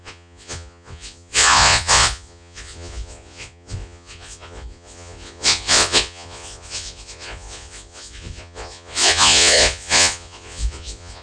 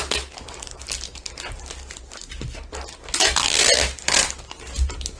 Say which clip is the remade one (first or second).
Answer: first